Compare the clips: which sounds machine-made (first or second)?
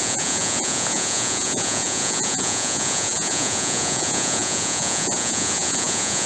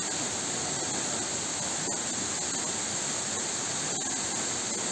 first